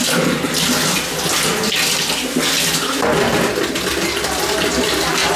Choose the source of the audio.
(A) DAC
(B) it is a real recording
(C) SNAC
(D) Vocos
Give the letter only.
B